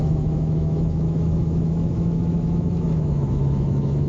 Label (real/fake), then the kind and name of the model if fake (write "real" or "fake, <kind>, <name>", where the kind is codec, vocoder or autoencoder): fake, autoencoder, DAC-VAE